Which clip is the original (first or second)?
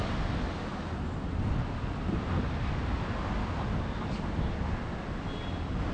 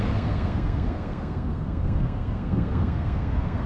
first